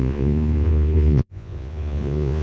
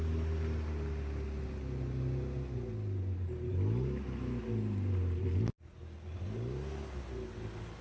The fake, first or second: first